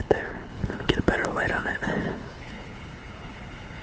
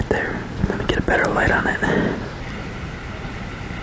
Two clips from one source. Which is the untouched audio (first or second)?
second